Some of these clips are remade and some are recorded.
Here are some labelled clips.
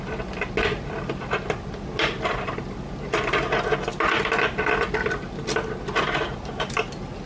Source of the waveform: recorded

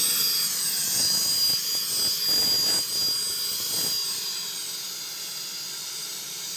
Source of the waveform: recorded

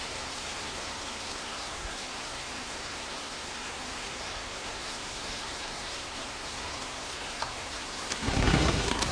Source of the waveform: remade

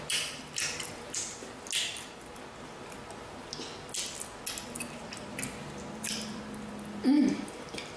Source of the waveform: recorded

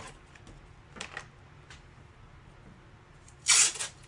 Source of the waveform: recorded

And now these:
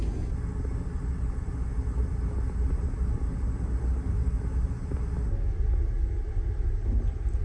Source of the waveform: recorded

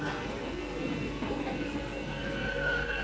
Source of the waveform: remade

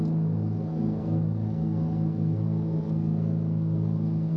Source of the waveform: remade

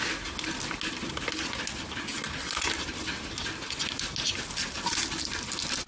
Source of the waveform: recorded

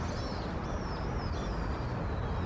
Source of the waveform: recorded